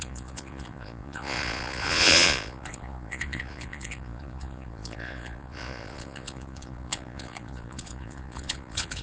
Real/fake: fake